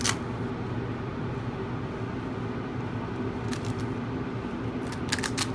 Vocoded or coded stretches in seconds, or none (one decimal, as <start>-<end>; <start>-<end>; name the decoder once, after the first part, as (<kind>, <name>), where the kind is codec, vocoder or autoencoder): none